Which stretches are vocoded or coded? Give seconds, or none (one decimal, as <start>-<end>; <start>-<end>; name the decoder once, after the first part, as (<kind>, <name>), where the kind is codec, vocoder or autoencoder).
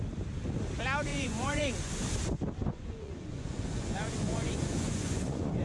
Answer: 1.1-1.9 (vocoder, Vocos); 2.6-5.6